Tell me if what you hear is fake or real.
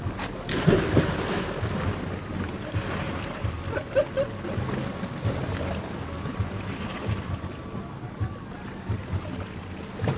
real